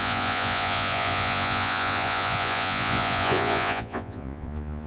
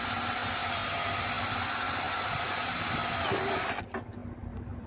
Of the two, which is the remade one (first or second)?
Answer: first